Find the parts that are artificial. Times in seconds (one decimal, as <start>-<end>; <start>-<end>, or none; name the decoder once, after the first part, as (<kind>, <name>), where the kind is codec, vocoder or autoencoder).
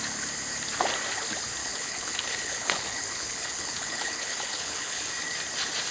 1.6-5.1 (codec, HILCodec)